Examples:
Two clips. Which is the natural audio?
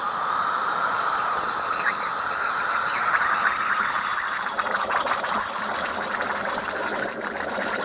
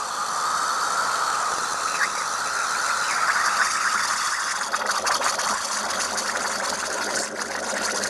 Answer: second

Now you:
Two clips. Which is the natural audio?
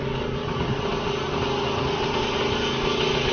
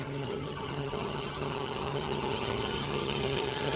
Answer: first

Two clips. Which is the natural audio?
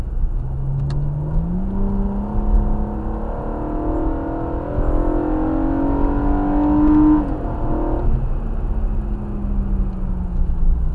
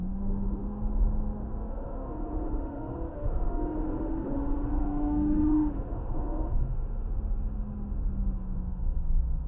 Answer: first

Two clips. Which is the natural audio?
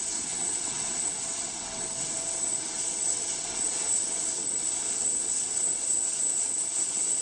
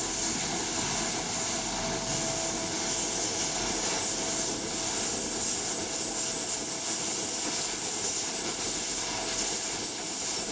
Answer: second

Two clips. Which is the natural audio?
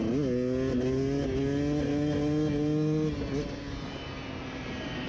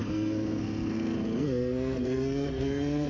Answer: first